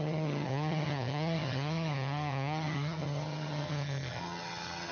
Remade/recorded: remade